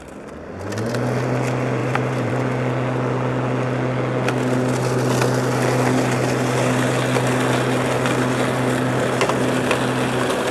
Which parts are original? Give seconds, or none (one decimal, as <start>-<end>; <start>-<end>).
0.0-1.8; 2.3-10.5